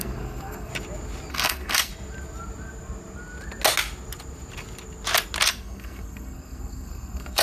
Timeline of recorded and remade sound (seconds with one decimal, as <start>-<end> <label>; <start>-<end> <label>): 0.0-0.7 remade; 0.7-1.3 recorded; 1.3-1.9 remade; 1.9-5.5 recorded; 5.5-7.4 remade